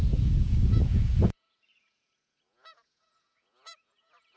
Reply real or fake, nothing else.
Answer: fake